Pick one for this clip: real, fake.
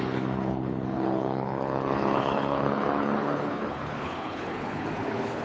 fake